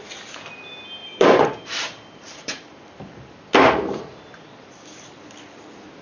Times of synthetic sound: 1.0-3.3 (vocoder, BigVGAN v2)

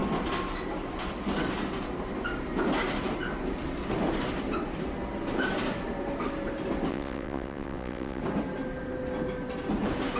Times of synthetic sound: 6.9-8.2 (vocoder, WaveNeXt)

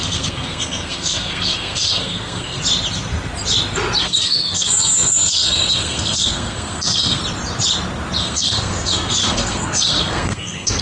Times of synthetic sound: 0.0-2.6 (codec, SNAC); 4.0-7.2; 8.2-10.8

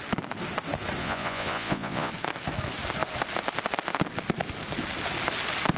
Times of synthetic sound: 1.0-2.1 (vocoder, Vocos)

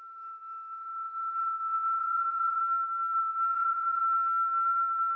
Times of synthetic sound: 2.0-2.6 (vocoder, Vocos); 3.5-4.0